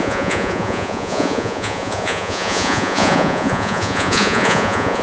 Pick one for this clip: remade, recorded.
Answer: remade